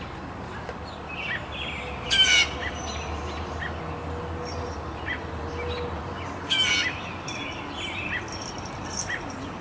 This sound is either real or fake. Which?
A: real